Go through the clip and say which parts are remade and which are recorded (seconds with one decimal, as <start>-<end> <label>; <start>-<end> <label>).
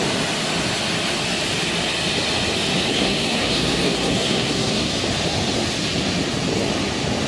0.0-2.9 recorded; 2.9-4.9 remade; 4.9-7.3 recorded